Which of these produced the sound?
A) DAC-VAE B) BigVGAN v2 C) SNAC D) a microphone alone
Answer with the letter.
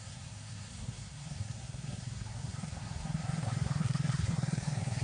C